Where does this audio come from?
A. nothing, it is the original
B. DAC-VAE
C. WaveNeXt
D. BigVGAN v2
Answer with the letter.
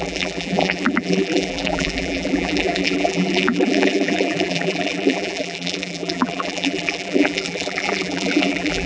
D